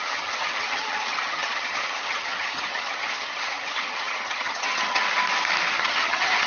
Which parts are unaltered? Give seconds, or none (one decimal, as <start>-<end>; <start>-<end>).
5.0-5.8